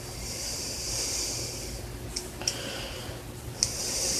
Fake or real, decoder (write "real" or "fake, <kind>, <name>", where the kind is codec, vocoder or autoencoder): real